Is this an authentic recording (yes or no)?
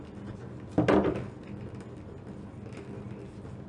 yes